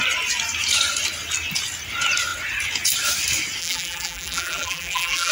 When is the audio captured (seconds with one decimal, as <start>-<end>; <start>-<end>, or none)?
0.0-3.6